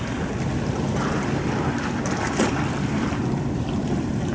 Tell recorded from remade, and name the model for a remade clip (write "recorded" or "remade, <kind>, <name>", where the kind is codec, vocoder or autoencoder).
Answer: recorded